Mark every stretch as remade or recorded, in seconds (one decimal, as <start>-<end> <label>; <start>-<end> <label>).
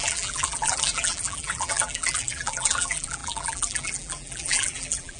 0.0-5.2 remade